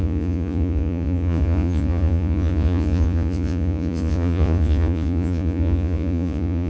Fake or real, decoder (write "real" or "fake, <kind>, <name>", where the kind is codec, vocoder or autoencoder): fake, vocoder, Vocos